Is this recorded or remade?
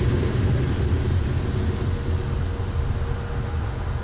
recorded